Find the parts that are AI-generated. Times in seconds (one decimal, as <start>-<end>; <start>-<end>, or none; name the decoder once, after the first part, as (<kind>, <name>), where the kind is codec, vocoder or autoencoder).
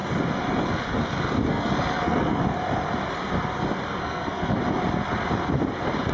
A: 1.5-2.4 (codec, SNAC); 4.0-4.6